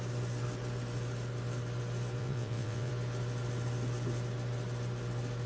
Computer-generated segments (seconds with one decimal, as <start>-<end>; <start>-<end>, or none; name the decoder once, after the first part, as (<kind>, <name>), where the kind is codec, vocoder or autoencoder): 2.2-2.9 (vocoder, WaveNeXt)